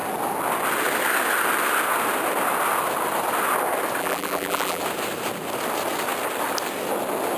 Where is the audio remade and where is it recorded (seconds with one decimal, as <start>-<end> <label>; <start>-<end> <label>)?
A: 0.0-4.0 recorded; 4.0-4.8 remade; 4.8-7.4 recorded